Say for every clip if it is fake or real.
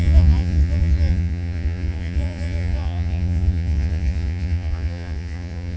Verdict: fake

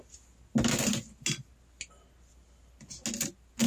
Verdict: real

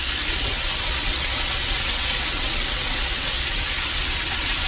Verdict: fake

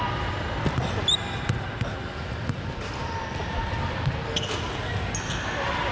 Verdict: real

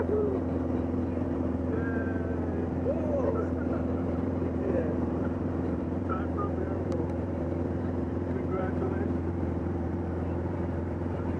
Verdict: fake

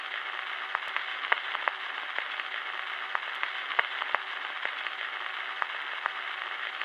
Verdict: real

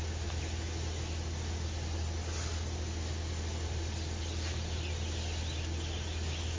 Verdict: real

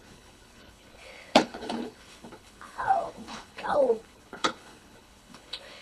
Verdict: fake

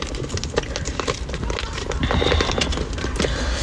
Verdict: real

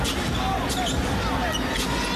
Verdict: real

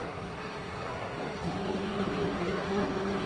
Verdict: fake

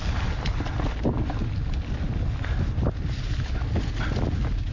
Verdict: real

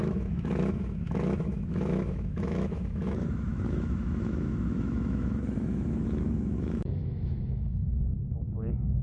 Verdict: fake